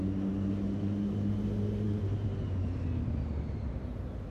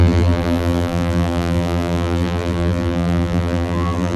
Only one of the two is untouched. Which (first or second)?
first